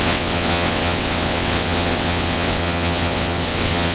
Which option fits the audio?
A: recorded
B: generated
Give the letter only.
B